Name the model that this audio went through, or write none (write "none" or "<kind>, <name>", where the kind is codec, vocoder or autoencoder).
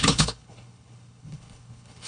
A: codec, HILCodec